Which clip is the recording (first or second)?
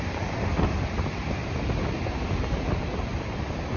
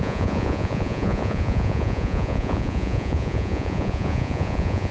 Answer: first